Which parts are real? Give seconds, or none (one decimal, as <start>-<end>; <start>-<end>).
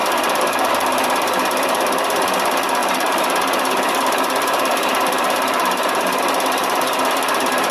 0.7-2.8; 6.2-7.7